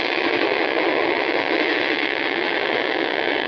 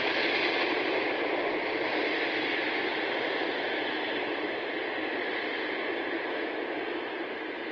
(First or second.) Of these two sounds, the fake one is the first